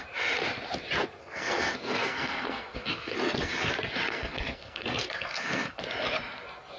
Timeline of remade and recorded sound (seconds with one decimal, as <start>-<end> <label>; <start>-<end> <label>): 0.0-1.2 recorded; 1.2-3.5 remade; 3.5-4.1 recorded; 4.1-5.8 remade; 5.8-6.8 recorded